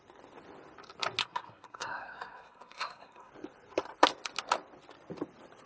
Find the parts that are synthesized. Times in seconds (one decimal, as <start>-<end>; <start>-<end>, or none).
1.2-3.3